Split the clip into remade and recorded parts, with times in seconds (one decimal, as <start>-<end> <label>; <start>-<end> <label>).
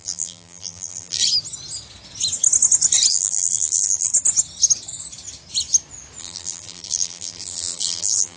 0.0-1.2 remade; 1.2-3.1 recorded; 3.1-4.1 remade; 4.1-6.2 recorded; 6.2-8.4 remade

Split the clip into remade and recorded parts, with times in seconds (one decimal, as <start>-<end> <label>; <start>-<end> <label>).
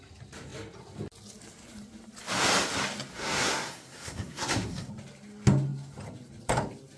0.0-3.1 recorded; 3.1-4.9 remade; 4.9-7.0 recorded